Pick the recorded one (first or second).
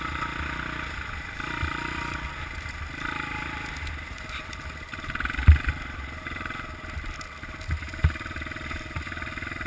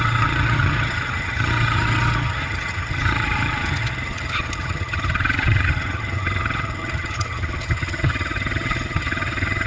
first